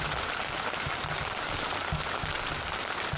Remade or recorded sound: recorded